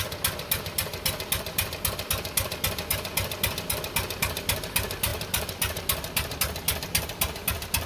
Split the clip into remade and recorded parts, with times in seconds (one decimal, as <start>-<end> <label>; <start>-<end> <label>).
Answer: 0.0-7.9 recorded